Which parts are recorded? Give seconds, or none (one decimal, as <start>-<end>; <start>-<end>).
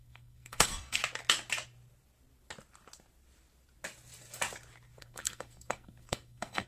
1.0-5.0